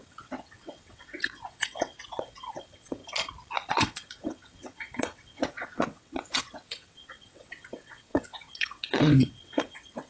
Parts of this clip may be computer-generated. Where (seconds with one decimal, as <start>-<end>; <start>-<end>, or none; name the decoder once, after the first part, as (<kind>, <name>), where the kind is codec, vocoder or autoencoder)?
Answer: 0.0-3.0 (vocoder, WaveNeXt); 3.7-10.1